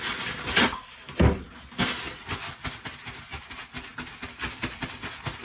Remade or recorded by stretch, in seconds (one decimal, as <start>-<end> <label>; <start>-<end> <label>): 0.0-5.4 recorded